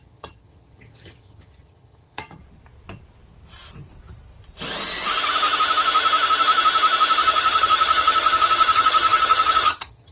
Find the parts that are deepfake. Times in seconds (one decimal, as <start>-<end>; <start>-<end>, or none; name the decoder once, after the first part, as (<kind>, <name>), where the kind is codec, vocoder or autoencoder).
0.0-2.4 (vocoder, HiFi-GAN); 7.2-10.1